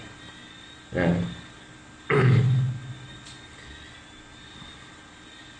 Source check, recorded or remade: recorded